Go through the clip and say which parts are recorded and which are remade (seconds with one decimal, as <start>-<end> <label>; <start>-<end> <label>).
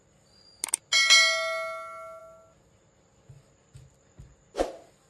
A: 0.0-5.1 recorded